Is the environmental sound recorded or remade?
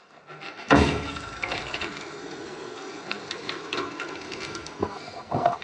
remade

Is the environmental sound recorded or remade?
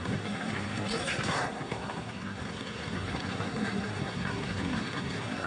remade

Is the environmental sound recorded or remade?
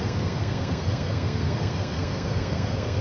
remade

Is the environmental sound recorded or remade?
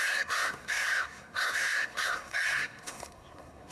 remade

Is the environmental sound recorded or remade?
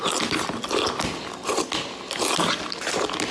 recorded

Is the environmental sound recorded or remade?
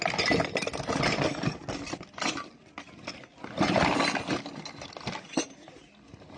recorded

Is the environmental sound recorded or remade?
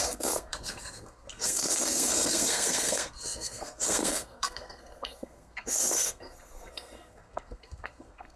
remade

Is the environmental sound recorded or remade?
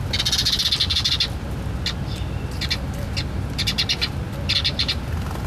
recorded